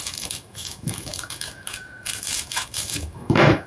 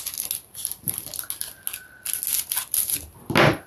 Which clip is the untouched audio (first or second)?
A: second